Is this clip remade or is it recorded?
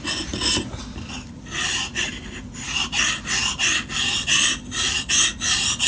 recorded